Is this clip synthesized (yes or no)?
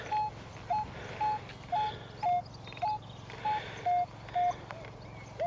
no